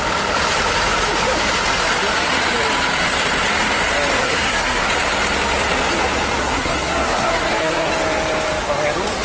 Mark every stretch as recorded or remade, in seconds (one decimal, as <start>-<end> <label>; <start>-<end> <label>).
0.0-4.2 recorded; 4.2-4.9 remade; 4.9-6.4 recorded; 6.4-7.9 remade; 7.9-9.2 recorded